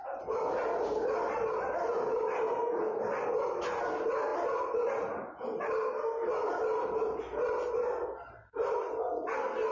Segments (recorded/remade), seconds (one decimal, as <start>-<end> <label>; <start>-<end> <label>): 0.0-9.7 recorded

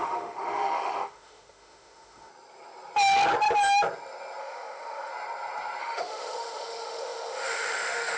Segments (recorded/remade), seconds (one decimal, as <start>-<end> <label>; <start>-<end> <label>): 0.0-2.3 remade; 2.3-4.4 recorded; 4.4-5.1 remade; 5.1-5.8 recorded; 5.8-8.2 remade

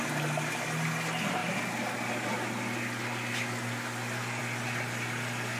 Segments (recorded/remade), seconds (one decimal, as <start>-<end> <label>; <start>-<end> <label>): 0.0-5.6 recorded

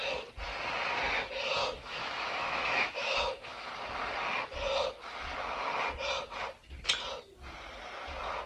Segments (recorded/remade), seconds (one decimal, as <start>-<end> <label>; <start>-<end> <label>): 0.0-1.6 recorded; 1.6-3.7 remade; 3.7-8.5 recorded

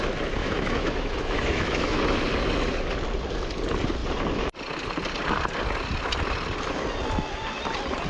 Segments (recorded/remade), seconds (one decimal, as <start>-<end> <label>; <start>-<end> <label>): 0.0-0.4 recorded; 0.4-2.0 remade; 2.0-8.1 recorded

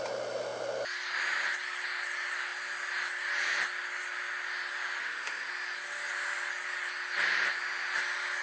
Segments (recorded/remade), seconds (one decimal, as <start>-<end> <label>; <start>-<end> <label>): 0.0-5.0 recorded; 5.0-5.5 remade; 5.5-8.4 recorded

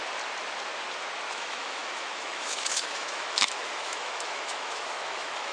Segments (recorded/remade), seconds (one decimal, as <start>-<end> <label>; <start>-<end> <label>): 0.0-1.3 recorded; 1.3-5.5 remade

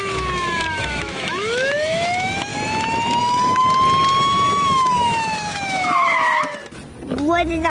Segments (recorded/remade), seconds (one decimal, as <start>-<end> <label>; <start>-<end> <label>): 0.0-2.5 remade; 2.5-3.2 recorded; 3.2-3.6 remade; 3.6-4.2 recorded; 4.2-6.6 remade; 6.6-7.7 recorded